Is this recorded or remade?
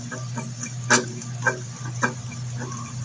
recorded